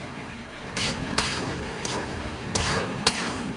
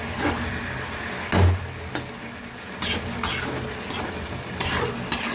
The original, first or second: second